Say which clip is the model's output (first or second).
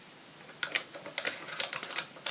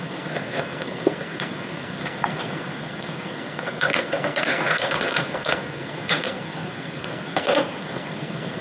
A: second